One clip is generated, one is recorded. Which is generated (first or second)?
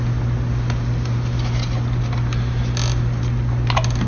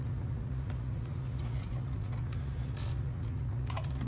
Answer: second